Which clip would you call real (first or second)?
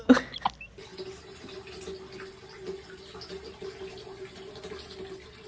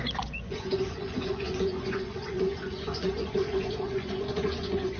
first